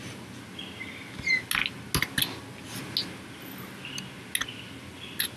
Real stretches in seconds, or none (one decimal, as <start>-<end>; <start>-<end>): 0.0-5.4